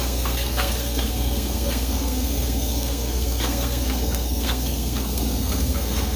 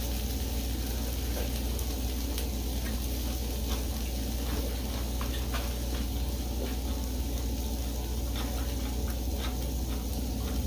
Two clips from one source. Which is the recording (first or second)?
second